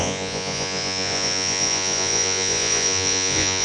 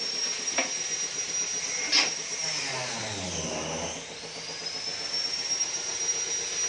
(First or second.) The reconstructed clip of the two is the first